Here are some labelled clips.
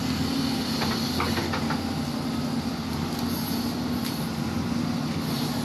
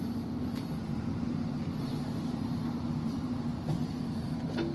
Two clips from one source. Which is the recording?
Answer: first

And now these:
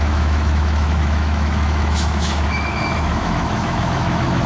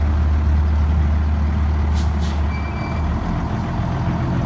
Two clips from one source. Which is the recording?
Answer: second